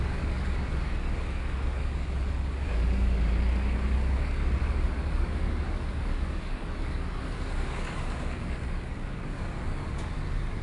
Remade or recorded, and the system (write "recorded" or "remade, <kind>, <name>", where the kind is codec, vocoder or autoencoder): remade, codec, DAC